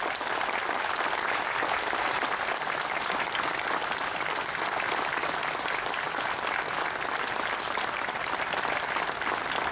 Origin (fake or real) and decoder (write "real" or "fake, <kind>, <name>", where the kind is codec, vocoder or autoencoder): real